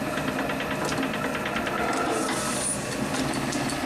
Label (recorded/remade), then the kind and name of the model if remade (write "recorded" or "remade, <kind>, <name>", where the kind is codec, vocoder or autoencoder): recorded